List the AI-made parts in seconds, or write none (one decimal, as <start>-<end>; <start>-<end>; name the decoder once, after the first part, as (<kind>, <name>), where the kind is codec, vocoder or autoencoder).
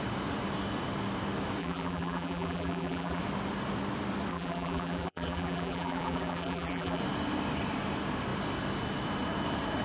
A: 1.6-3.2 (vocoder, BigVGAN v2); 4.3-7.0